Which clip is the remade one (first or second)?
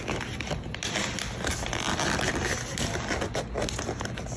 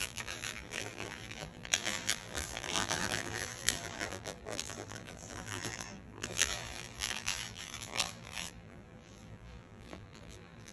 second